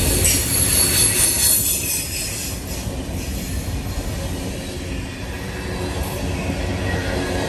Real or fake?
real